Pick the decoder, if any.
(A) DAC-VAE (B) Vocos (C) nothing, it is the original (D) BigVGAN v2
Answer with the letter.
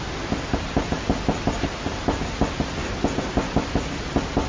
C